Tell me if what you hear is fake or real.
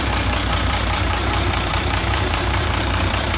fake